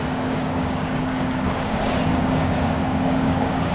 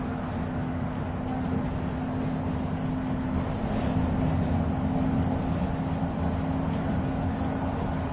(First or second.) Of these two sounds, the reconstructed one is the first